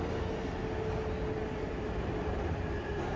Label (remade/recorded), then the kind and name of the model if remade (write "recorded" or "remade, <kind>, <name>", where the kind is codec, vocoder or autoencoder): recorded